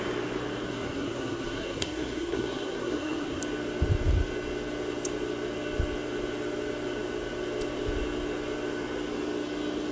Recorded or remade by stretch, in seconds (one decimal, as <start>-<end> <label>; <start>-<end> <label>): 0.0-0.7 recorded; 0.7-3.4 remade; 3.4-9.9 recorded